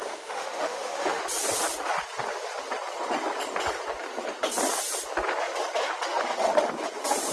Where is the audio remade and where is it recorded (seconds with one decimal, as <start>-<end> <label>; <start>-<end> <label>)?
0.0-1.2 remade; 1.2-7.3 recorded